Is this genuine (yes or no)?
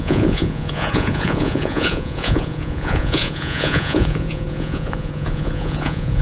no